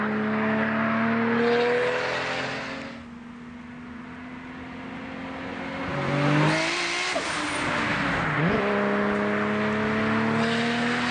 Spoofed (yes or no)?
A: no